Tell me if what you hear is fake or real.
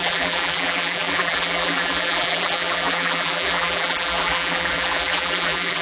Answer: fake